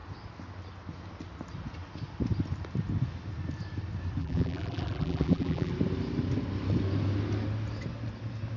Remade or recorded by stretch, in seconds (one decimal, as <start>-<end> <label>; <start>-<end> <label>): 0.0-4.2 recorded; 4.2-5.7 remade; 5.7-8.6 recorded